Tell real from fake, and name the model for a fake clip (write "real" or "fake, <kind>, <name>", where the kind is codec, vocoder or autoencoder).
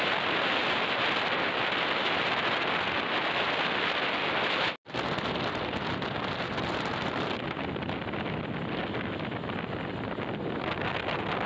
real